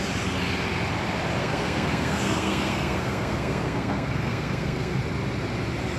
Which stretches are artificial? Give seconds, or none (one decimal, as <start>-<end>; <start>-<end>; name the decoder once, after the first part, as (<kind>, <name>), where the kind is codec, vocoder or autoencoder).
1.4-5.0 (codec, SNAC)